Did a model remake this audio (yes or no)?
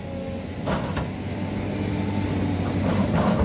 no